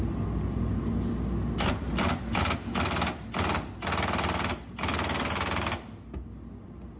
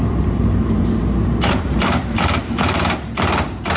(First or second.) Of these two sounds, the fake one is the second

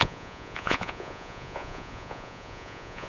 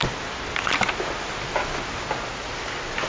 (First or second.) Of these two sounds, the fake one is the first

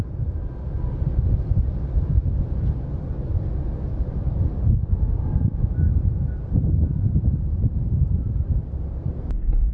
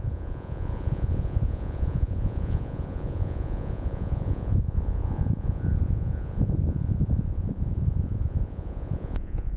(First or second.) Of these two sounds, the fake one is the second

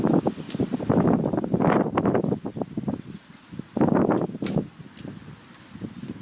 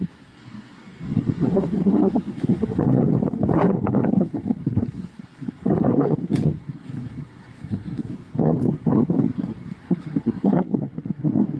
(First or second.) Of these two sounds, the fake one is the second